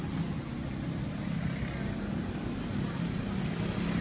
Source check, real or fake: real